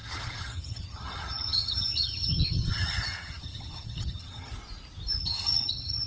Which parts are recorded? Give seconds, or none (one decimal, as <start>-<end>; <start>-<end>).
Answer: 4.5-5.2